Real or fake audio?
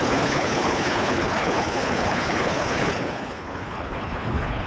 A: fake